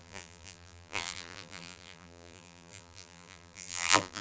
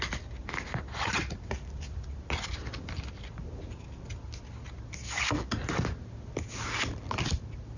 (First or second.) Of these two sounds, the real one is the second